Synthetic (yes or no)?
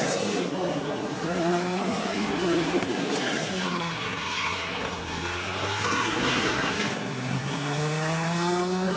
yes